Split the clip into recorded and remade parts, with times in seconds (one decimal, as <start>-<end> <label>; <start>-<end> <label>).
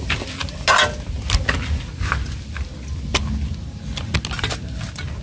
0.0-5.2 recorded